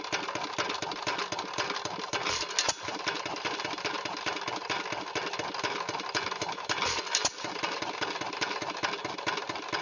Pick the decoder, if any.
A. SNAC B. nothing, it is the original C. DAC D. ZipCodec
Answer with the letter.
B